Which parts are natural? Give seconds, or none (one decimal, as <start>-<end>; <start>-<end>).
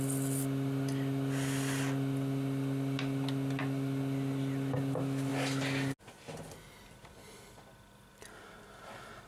0.0-9.3